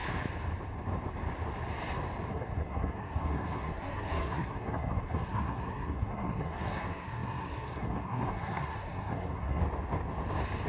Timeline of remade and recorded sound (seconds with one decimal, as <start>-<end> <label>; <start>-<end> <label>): 0.0-2.3 recorded; 2.3-9.6 remade; 9.6-10.7 recorded